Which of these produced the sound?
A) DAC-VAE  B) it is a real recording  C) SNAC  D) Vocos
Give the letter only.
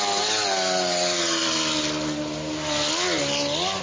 B